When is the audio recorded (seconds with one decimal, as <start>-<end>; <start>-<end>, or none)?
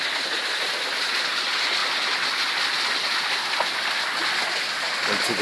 0.0-5.4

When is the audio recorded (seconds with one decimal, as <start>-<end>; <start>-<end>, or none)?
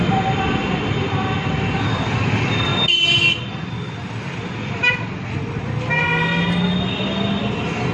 0.0-7.9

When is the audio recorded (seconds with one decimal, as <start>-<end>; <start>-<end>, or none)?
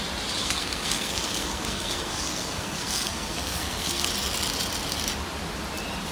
0.0-0.4; 4.1-6.1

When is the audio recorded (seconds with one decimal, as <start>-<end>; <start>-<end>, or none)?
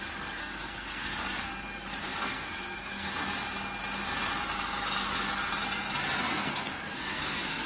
0.0-0.4; 1.5-2.0; 3.1-6.2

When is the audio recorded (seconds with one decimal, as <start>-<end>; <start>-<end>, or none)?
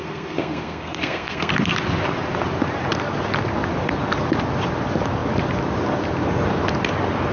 1.5-7.3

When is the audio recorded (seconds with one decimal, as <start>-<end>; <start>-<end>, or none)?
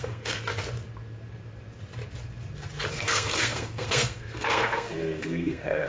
0.5-2.9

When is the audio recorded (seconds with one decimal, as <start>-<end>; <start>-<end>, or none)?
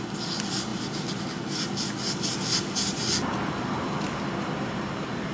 0.0-5.3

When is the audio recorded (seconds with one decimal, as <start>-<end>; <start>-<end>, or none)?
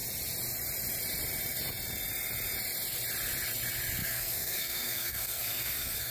0.0-4.0